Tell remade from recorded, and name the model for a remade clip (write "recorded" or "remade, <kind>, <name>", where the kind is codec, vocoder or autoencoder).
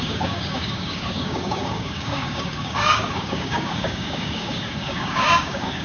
remade, codec, DAC